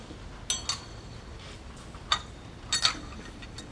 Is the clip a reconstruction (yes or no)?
no